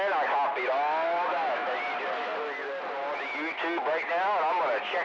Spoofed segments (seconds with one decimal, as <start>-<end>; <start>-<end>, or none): none